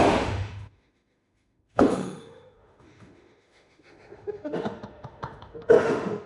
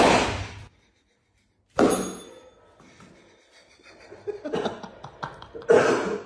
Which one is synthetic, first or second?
first